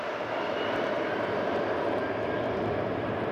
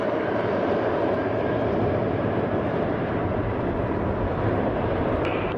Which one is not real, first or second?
second